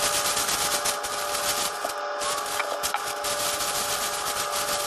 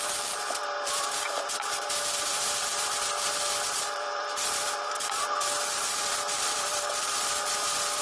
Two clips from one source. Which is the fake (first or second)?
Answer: second